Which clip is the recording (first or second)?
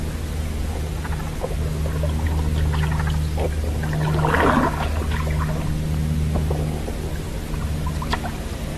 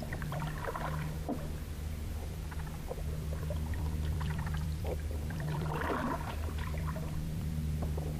first